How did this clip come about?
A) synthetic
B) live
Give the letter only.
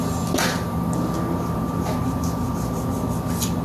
B